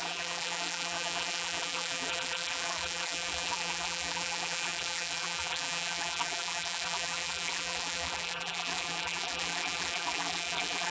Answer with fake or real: fake